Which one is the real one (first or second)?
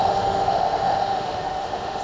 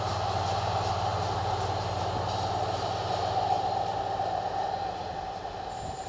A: second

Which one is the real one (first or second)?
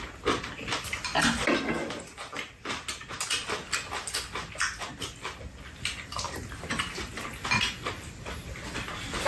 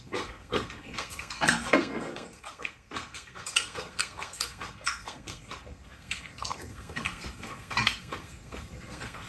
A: first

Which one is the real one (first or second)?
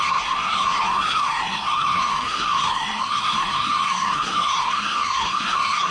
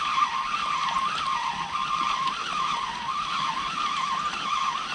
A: second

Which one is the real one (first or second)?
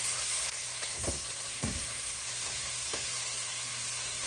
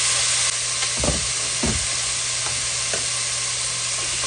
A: second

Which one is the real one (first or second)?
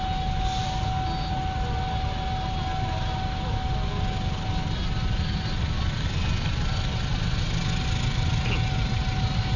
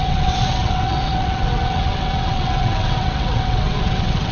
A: first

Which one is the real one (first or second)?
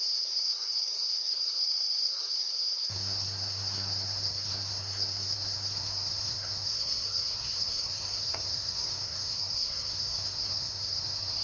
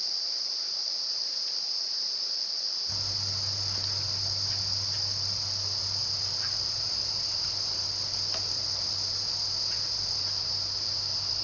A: second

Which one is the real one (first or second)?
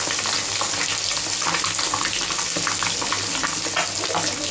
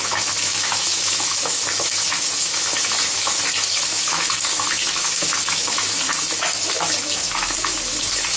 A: first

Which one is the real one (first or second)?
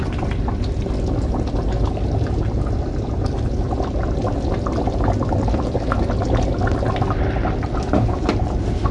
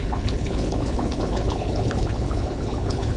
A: first